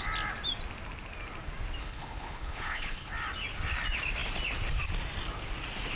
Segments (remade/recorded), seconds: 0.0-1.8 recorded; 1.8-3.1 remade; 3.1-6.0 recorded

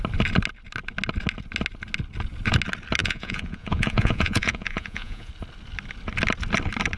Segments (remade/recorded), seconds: 0.0-3.0 recorded; 3.0-5.3 remade; 5.3-7.0 recorded

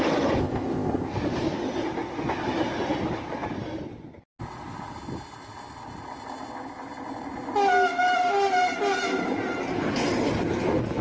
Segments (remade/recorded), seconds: 0.0-0.4 recorded; 0.4-1.1 remade; 1.1-11.0 recorded

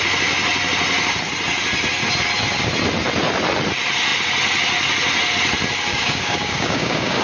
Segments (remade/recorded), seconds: 0.0-5.9 recorded; 5.9-7.2 remade